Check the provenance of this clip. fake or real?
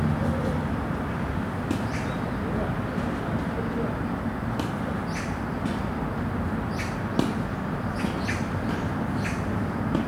real